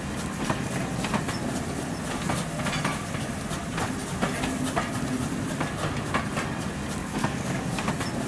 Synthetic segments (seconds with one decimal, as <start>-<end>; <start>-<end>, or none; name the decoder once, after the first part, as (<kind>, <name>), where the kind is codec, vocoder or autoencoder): 7.0-7.9 (codec, DAC)